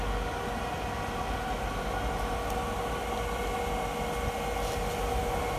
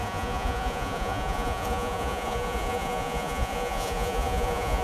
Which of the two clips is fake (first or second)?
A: second